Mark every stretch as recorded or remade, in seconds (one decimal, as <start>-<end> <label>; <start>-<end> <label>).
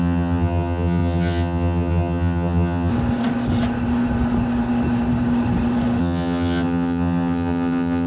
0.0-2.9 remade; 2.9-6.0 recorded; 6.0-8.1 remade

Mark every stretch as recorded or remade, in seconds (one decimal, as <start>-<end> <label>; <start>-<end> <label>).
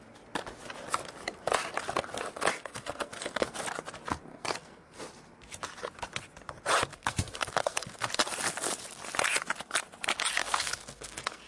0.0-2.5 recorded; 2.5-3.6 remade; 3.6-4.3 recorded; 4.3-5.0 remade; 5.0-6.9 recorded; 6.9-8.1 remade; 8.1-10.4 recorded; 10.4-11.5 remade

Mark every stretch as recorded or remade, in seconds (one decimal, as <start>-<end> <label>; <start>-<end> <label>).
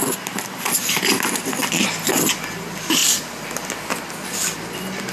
0.0-5.1 recorded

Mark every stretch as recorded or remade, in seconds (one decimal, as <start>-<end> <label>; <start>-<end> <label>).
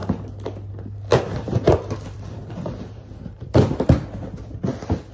0.0-1.1 recorded; 1.1-4.2 remade; 4.2-5.1 recorded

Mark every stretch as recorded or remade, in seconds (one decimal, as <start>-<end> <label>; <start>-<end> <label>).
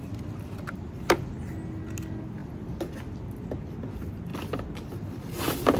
0.0-2.4 recorded; 2.4-2.9 remade; 2.9-4.3 recorded; 4.3-5.0 remade; 5.0-5.8 recorded